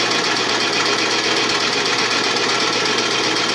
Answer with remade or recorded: recorded